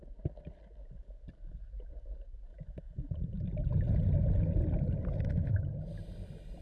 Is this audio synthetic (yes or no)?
no